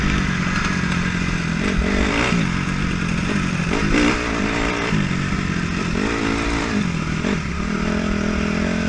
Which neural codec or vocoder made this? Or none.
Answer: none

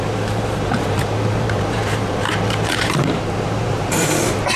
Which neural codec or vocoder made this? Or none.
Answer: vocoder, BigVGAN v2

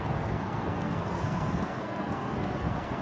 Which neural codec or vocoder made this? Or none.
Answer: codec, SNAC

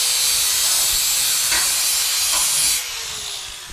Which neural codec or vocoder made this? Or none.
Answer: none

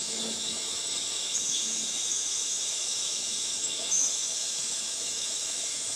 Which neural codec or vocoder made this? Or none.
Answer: autoencoder, DAC-VAE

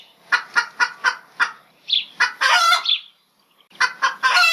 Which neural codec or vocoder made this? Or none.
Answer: none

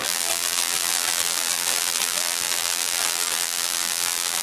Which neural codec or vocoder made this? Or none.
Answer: vocoder, BigVGAN v2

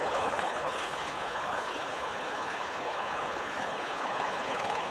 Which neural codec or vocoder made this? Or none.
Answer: codec, HILCodec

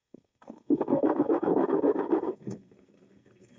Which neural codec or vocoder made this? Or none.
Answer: codec, SNAC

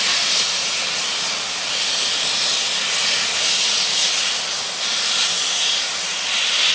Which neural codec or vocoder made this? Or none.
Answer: none